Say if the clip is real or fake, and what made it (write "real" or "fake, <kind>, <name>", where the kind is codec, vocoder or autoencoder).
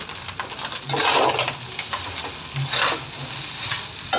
real